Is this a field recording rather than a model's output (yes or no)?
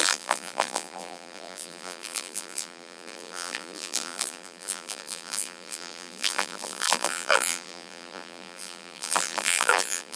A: no